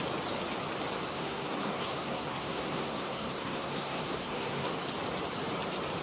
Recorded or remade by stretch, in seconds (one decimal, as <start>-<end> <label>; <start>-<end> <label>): 0.0-1.1 recorded; 1.1-4.7 remade; 4.7-6.0 recorded